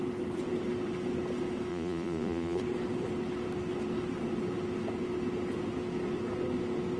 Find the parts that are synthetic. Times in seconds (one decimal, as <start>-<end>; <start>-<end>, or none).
1.7-2.6